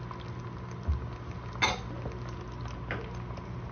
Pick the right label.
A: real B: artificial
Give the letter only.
A